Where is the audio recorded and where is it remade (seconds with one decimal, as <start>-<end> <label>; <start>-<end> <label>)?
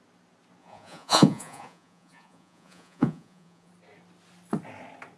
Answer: 0.0-0.6 recorded; 0.6-3.7 remade; 3.7-5.2 recorded